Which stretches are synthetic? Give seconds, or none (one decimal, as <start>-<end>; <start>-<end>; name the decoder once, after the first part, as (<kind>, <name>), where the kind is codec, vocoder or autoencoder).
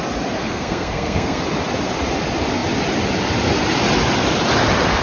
0.4-1.4 (codec, SNAC)